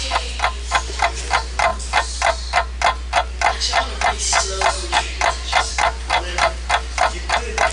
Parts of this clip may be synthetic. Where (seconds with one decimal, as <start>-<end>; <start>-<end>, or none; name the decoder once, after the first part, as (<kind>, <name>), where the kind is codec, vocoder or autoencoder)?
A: none